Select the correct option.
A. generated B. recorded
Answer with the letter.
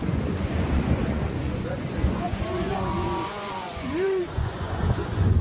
A